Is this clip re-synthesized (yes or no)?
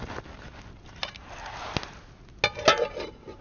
no